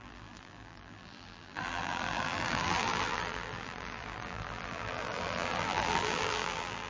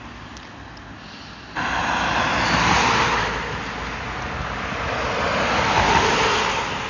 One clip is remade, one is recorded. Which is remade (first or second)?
first